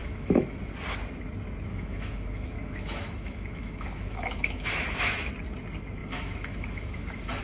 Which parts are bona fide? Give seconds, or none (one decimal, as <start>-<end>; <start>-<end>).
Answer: 0.6-1.7; 5.3-6.0